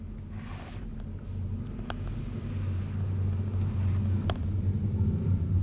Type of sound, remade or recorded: recorded